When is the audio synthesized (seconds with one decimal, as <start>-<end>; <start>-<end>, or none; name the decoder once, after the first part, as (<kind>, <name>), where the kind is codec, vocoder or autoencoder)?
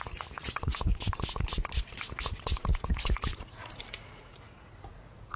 0.0-0.9 (vocoder, Vocos); 2.1-5.4